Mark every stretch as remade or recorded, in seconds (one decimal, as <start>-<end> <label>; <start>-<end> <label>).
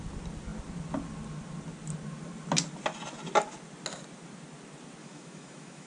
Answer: 0.0-5.0 recorded; 5.0-5.9 remade